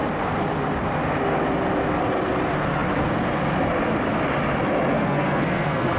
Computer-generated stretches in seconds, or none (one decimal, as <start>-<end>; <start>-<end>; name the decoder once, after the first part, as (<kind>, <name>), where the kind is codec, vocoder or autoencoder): 4.9-6.0 (codec, SNAC)